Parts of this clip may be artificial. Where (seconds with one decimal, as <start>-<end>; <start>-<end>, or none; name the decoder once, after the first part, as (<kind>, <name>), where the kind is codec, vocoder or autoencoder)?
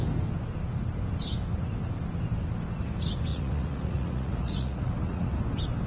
3.3-5.4 (vocoder, Vocos)